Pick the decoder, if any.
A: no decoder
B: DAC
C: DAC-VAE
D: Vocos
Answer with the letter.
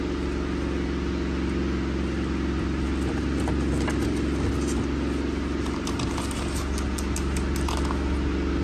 A